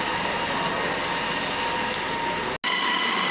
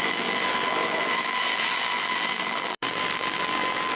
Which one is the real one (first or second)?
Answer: first